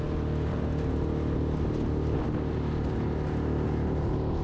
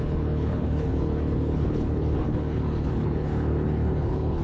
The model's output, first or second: second